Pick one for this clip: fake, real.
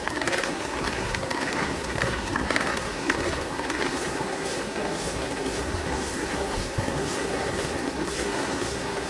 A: fake